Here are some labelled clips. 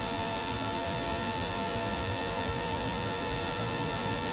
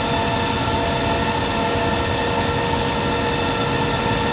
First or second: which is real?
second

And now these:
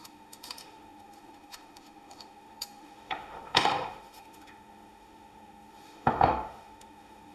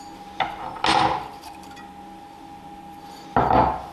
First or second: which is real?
second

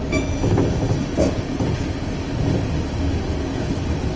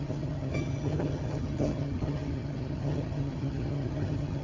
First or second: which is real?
first